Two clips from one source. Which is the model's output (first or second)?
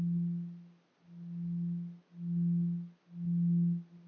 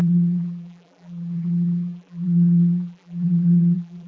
second